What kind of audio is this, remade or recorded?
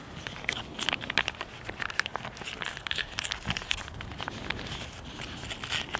recorded